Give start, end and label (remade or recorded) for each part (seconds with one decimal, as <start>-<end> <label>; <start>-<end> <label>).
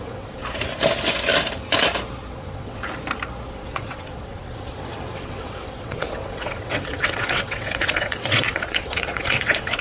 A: 0.0-0.4 remade; 0.4-2.3 recorded; 2.3-2.8 remade; 2.8-3.5 recorded; 3.5-9.8 remade